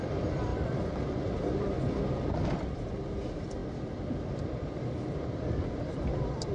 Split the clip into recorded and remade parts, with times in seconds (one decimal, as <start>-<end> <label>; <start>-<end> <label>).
0.0-6.5 remade